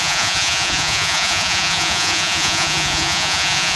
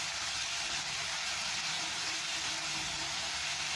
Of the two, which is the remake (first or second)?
first